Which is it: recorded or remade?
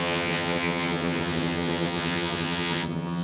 remade